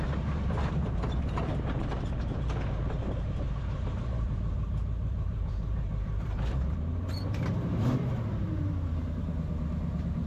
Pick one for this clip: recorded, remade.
remade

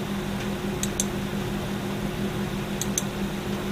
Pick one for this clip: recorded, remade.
recorded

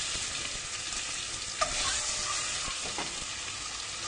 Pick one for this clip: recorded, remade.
recorded